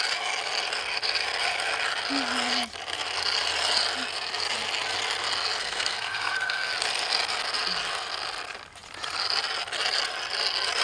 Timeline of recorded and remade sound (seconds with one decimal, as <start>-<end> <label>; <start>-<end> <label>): 0.0-5.6 recorded; 5.6-6.7 remade; 6.7-10.8 recorded